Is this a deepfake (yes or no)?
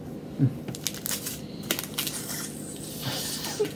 no